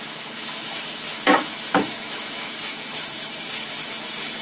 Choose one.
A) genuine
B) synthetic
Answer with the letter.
B